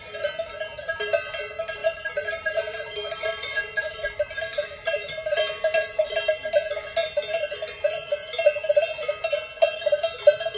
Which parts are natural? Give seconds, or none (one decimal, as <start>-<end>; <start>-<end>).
0.0-1.8; 6.5-10.6